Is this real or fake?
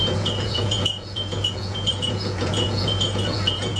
fake